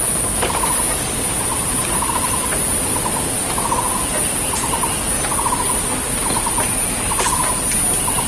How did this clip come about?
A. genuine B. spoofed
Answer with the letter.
A